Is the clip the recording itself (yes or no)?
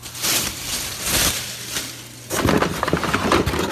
yes